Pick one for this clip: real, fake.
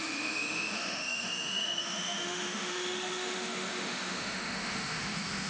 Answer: fake